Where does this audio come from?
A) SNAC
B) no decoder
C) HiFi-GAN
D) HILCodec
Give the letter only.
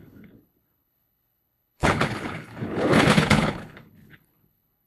D